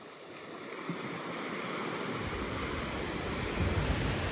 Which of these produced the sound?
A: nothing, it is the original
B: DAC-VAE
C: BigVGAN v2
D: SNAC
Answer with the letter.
C